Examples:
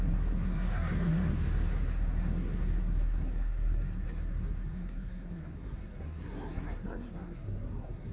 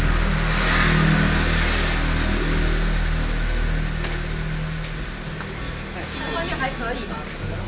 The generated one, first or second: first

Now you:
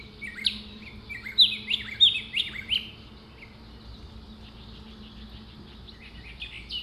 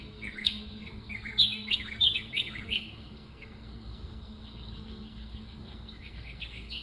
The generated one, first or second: second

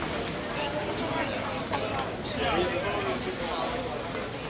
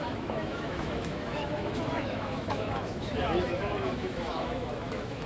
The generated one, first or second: second